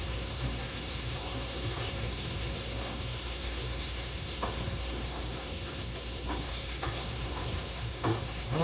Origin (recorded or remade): remade